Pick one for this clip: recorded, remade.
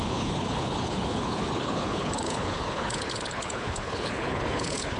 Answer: remade